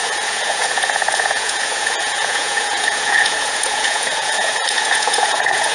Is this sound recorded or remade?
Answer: remade